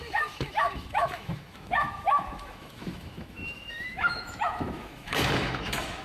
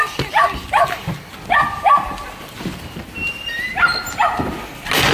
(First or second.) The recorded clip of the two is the second